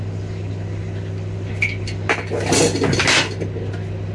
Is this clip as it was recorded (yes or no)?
yes